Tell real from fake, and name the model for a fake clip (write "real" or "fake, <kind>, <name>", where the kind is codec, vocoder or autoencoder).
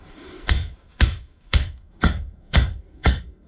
fake, codec, SNAC